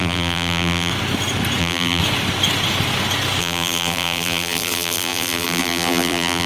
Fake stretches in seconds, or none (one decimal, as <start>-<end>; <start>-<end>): 0.0-0.9; 1.6-2.0; 3.4-6.5